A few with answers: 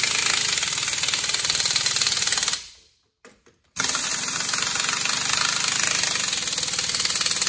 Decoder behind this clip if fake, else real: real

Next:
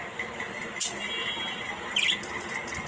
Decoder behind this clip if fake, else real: real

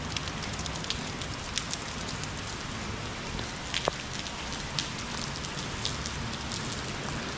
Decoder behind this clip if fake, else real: real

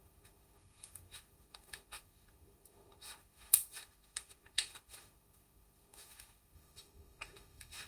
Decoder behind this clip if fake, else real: fake, autoencoder, DAC-VAE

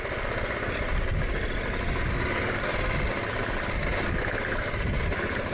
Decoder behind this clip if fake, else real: real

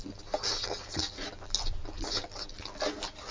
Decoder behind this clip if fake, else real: real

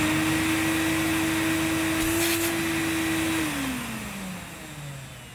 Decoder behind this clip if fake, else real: real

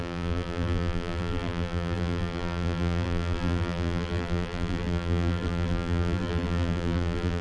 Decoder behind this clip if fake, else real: fake, vocoder, BigVGAN v2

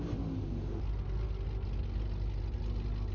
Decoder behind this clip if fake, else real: real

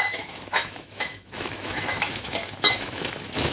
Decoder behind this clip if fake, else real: fake, autoencoder, DAC-VAE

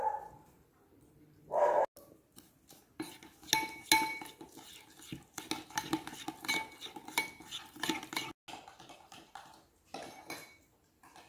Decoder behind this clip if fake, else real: real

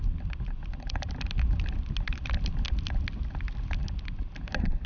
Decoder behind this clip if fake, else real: real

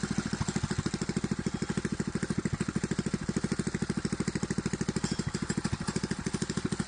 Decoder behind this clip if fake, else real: real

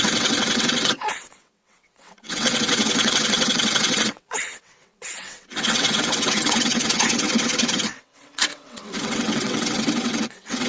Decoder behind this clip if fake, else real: fake, vocoder, WaveNeXt